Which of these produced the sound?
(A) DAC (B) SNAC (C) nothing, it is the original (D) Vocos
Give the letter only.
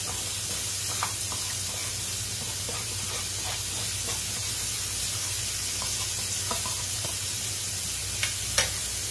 C